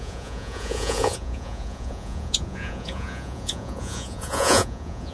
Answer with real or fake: fake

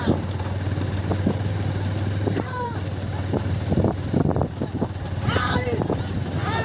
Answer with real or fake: real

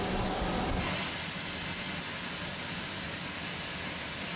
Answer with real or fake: real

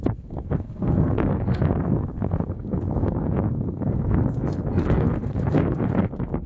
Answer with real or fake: fake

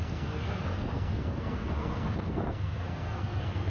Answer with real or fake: fake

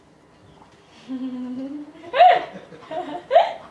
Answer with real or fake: real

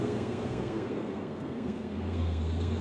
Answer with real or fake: fake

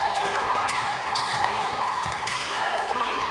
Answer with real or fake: fake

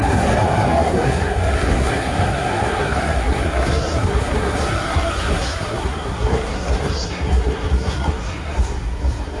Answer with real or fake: fake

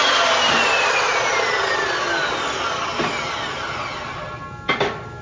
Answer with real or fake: real